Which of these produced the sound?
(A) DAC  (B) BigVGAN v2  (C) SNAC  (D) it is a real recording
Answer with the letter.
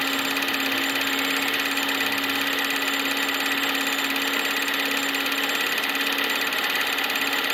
D